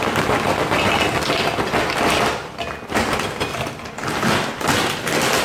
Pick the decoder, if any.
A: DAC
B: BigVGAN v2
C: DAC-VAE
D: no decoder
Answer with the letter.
D